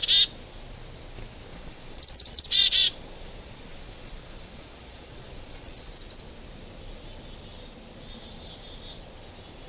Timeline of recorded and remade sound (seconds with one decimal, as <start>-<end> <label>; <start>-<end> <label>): 0.0-1.5 recorded; 1.5-5.9 remade; 5.9-9.7 recorded

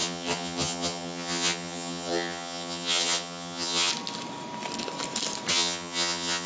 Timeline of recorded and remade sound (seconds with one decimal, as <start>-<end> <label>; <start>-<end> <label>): 0.0-3.9 remade; 3.9-5.5 recorded; 5.5-6.5 remade

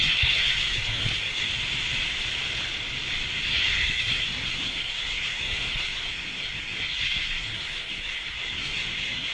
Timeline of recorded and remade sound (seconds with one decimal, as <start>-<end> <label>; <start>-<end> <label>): 0.0-1.5 remade; 1.5-3.4 recorded; 3.4-9.3 remade

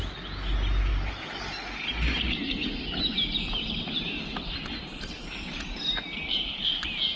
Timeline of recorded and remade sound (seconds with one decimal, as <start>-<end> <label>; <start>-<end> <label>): 0.0-0.9 recorded; 0.9-1.4 remade; 1.4-7.2 recorded

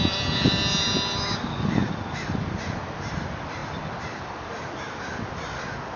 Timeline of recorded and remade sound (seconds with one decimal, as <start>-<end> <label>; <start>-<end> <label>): 0.0-6.0 recorded

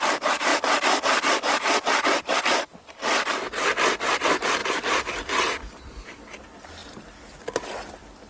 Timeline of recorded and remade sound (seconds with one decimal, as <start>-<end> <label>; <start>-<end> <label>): 0.0-0.5 remade; 0.5-2.4 recorded; 2.4-4.6 remade; 4.6-5.7 recorded; 5.7-6.8 remade; 6.8-8.3 recorded